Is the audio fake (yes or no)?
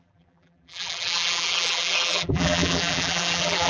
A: yes